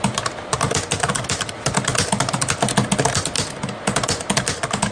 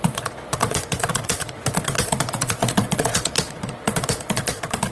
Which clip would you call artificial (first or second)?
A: second